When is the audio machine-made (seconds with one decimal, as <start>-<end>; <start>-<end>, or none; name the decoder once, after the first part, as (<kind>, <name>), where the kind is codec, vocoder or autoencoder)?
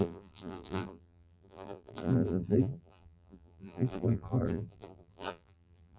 0.0-6.0 (vocoder, BigVGAN v2)